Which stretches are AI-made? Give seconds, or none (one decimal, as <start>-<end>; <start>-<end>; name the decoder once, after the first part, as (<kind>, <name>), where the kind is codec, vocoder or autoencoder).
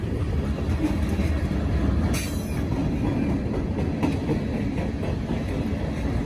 none